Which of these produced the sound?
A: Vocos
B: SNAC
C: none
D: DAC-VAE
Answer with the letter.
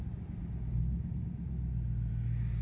C